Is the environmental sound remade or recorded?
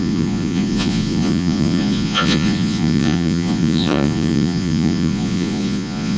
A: remade